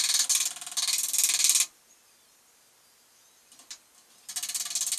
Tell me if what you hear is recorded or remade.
recorded